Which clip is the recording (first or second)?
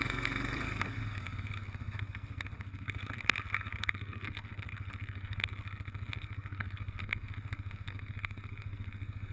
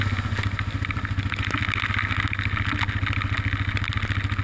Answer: second